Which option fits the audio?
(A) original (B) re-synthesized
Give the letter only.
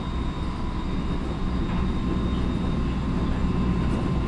A